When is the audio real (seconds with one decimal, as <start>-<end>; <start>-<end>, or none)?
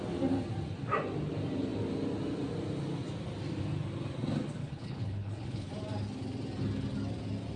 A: 0.0-4.6; 5.7-7.6